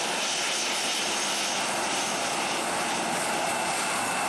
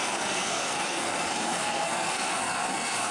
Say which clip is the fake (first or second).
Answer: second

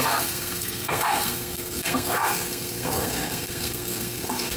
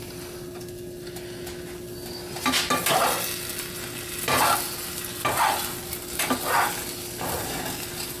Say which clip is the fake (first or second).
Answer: first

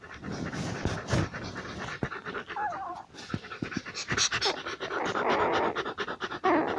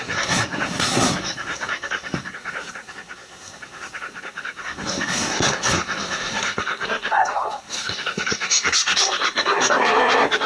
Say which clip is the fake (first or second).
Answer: second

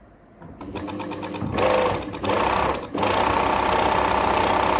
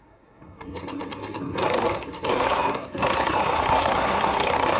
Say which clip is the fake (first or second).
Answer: second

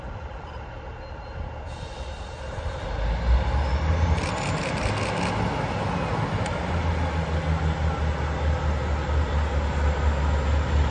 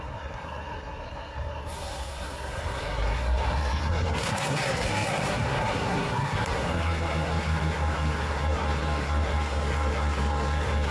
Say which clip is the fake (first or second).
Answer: second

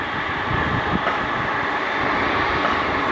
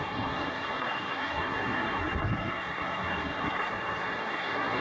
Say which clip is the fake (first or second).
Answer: second